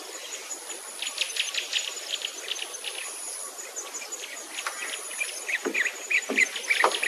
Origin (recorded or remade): recorded